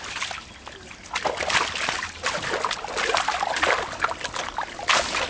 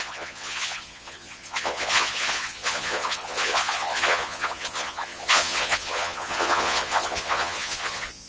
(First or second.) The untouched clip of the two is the first